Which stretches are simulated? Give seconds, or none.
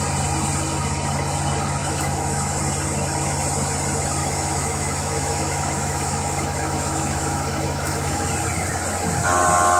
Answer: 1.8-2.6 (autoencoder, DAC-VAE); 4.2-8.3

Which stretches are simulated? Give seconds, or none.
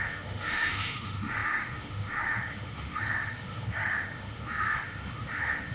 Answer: 0.0-5.7 (autoencoder, DAC-VAE)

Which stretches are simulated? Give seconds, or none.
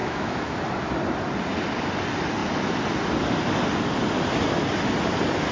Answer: 0.0-0.6 (autoencoder, DAC-VAE)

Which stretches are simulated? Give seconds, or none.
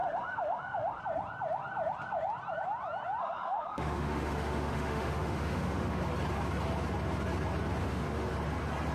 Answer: 0.0-1.0 (autoencoder, DAC-VAE); 3.2-6.0; 7.8-8.3